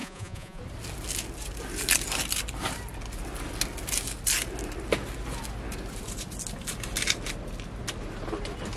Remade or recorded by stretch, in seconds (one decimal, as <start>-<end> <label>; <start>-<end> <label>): 0.0-0.6 remade; 0.6-8.8 recorded